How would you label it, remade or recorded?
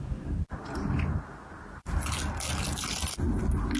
recorded